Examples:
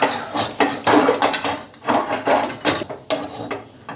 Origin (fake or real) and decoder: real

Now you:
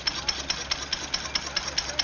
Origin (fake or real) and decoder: real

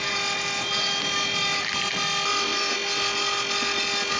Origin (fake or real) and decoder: real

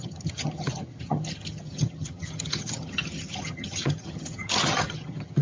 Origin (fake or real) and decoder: fake, vocoder, HiFi-GAN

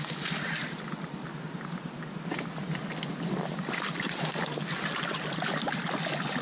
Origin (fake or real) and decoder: real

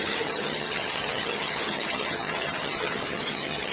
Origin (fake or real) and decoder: fake, vocoder, HiFi-GAN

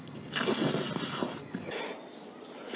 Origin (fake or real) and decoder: real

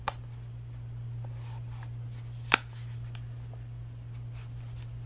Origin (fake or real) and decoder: real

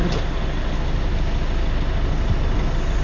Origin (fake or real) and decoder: real